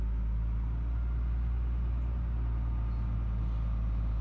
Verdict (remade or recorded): recorded